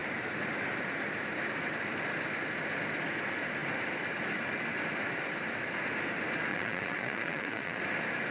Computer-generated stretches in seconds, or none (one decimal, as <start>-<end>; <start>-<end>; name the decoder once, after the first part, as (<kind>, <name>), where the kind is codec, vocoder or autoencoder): 6.5-7.8 (vocoder, Vocos)